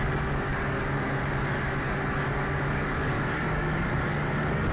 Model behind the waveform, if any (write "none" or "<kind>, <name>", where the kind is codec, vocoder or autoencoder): codec, DAC